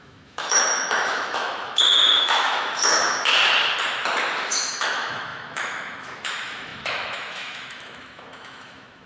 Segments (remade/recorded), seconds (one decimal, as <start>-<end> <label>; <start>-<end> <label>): 0.0-3.3 remade; 3.3-4.5 recorded; 4.5-9.1 remade